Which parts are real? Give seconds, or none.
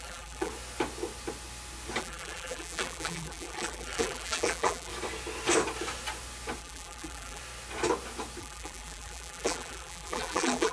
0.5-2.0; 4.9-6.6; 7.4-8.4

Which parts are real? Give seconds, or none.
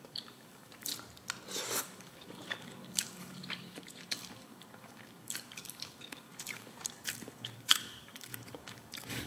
0.9-1.8